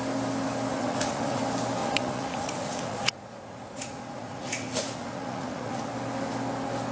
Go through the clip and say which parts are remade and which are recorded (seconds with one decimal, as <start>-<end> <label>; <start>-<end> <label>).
0.0-0.7 recorded; 0.7-1.4 remade; 1.4-1.8 recorded; 1.8-5.9 remade; 5.9-6.9 recorded